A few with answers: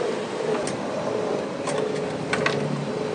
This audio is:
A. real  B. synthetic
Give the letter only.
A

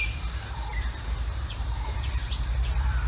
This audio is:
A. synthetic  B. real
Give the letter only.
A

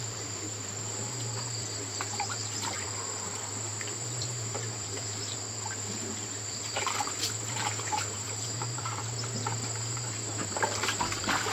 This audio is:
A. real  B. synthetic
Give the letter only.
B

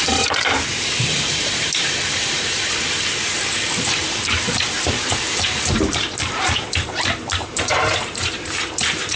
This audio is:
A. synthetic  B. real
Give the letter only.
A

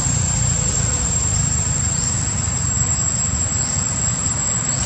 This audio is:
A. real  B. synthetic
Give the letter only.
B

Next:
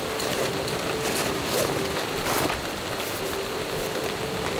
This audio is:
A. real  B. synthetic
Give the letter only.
A